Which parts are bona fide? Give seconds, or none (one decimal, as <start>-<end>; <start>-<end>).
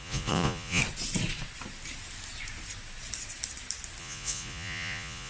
0.8-4.0